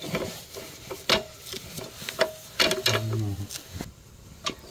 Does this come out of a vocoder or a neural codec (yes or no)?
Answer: no